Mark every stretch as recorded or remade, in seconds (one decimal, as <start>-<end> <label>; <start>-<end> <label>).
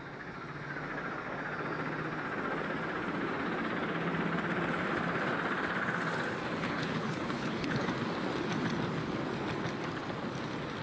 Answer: 0.0-6.6 recorded; 6.6-7.9 remade; 7.9-10.8 recorded